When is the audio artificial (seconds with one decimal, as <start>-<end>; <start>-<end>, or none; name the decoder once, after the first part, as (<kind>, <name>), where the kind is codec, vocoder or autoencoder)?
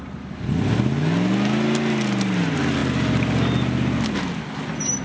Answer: none